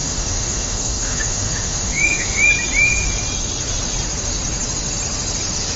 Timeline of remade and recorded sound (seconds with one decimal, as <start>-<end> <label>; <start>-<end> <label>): 0.0-2.5 remade; 2.5-5.8 recorded